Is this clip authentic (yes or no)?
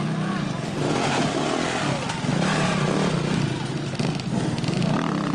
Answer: yes